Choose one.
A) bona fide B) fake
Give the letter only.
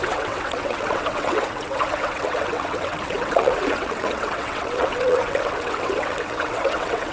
B